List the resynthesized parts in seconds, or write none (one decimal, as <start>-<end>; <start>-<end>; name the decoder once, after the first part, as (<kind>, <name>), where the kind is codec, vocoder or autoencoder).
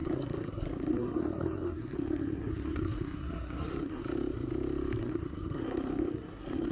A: 0.0-4.0 (codec, SNAC); 5.0-6.7